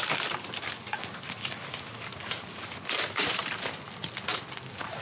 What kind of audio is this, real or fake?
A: real